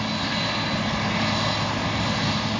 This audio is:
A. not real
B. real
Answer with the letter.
B